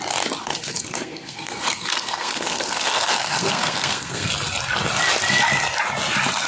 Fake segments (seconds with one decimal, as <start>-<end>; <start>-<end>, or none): 0.4-4.3